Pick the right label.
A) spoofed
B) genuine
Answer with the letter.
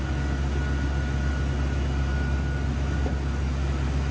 B